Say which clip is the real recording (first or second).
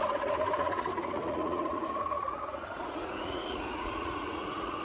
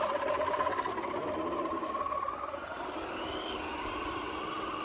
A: second